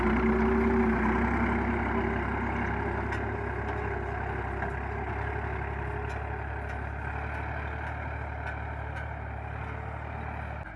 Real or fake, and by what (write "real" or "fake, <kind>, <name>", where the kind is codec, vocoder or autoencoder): real